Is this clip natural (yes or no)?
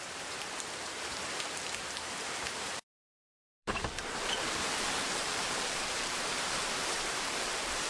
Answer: no